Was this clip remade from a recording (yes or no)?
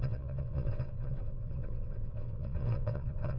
yes